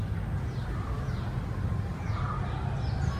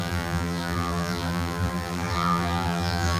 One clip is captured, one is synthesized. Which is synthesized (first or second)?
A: second